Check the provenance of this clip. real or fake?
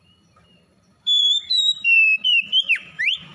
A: fake